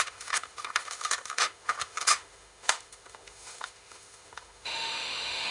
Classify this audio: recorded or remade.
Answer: remade